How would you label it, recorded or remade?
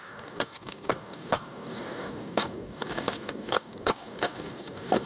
remade